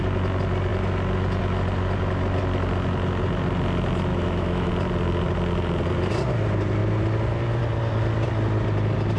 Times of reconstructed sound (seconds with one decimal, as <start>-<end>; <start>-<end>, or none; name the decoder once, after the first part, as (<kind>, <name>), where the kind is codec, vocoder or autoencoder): 4.1-4.7 (autoencoder, DAC-VAE)